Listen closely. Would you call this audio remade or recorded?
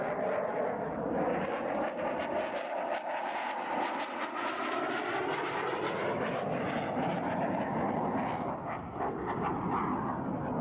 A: recorded